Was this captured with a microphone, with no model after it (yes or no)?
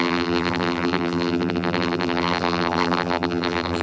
no